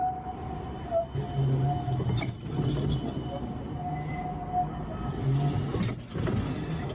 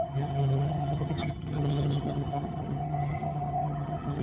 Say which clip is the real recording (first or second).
first